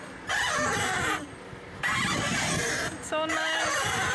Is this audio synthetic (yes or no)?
no